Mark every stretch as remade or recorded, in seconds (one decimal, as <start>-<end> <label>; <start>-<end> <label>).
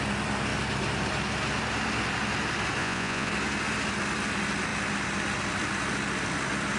0.0-2.8 recorded; 2.8-3.3 remade; 3.3-6.8 recorded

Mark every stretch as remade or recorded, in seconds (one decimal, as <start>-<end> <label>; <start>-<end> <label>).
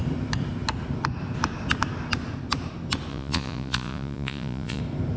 0.0-3.1 recorded; 3.1-4.8 remade; 4.8-5.2 recorded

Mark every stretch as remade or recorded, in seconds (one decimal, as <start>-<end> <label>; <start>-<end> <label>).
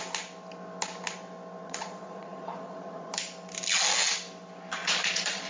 0.0-1.6 recorded; 1.6-3.1 remade; 3.1-4.8 recorded; 4.8-5.5 remade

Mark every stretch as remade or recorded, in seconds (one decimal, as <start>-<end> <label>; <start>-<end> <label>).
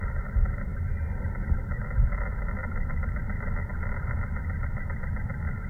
0.0-5.7 recorded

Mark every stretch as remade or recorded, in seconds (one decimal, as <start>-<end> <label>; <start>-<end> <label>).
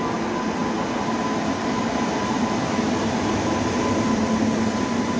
0.0-5.2 recorded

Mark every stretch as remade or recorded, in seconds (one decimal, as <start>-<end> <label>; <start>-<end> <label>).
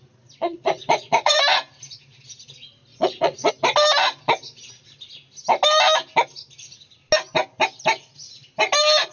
0.0-0.4 recorded; 0.4-1.4 remade; 1.4-2.9 recorded; 2.9-3.5 remade; 3.5-9.1 recorded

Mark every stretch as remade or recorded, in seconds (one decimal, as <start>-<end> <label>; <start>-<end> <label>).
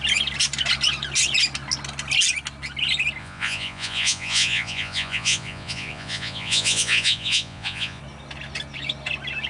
0.0-3.2 recorded; 3.2-8.0 remade; 8.0-9.5 recorded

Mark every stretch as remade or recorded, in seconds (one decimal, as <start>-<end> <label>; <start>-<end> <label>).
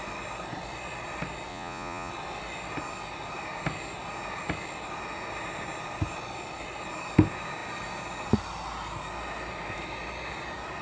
0.0-1.5 recorded; 1.5-2.1 remade; 2.1-10.8 recorded